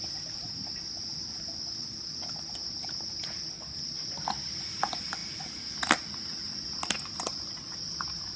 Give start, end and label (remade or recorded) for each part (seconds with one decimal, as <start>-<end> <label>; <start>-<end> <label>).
0.0-8.4 recorded